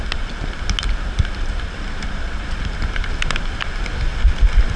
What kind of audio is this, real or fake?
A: real